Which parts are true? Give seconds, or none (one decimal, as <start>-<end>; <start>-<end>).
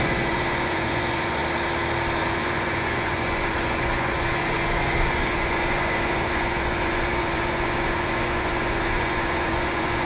1.4-2.2